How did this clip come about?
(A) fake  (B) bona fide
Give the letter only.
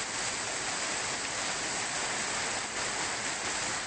B